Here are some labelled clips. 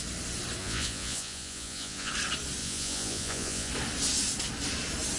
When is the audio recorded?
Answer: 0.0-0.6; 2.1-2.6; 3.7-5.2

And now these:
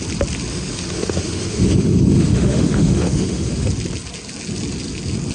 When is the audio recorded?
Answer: 0.0-0.5; 3.7-5.3

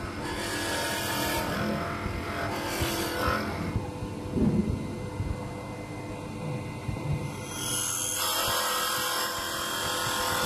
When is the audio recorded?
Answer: 0.0-6.8; 7.7-10.5

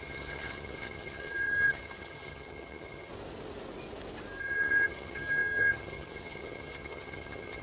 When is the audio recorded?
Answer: 3.1-4.4

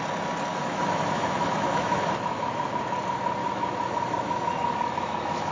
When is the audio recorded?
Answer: 0.0-0.5; 2.7-3.4